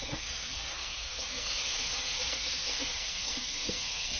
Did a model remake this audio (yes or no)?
yes